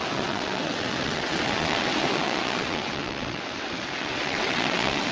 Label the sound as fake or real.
fake